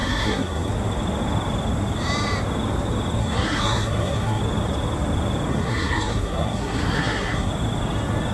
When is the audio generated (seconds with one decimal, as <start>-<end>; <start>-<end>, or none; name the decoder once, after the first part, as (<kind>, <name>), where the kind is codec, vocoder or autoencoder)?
0.0-0.7 (codec, SNAC); 3.2-4.4; 5.5-7.5